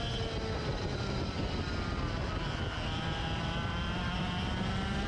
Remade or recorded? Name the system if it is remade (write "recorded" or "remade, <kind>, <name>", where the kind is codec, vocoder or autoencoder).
recorded